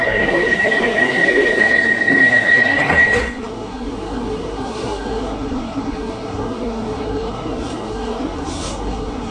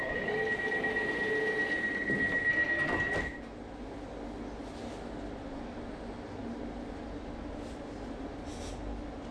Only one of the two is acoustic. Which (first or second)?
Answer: second